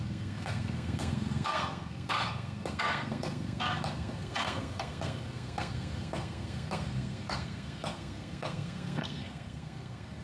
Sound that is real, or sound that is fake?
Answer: fake